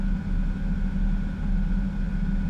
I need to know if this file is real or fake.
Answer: real